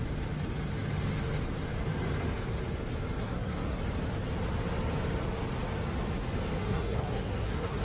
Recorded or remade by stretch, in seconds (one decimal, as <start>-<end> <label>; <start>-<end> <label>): 0.0-3.2 recorded; 3.2-3.8 remade; 3.8-6.6 recorded; 6.6-7.8 remade